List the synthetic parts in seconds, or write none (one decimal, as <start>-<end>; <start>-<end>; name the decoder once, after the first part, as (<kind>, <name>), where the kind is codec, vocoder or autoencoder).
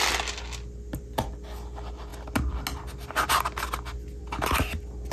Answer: none